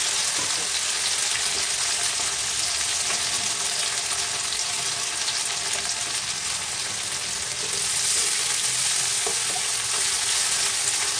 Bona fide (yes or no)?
yes